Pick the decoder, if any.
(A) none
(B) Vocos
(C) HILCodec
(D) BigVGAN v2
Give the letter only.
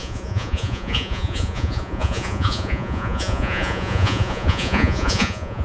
B